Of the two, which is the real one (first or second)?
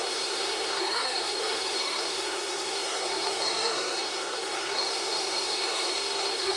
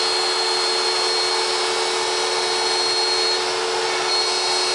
second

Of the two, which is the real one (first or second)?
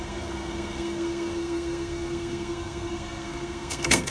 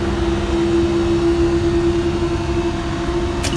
second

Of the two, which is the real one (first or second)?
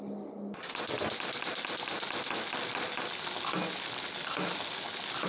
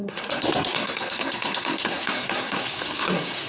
first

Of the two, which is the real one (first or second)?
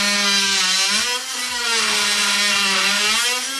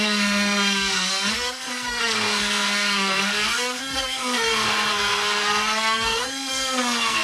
first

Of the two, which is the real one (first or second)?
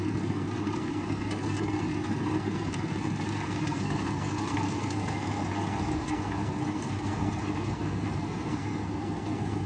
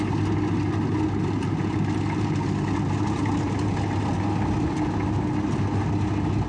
second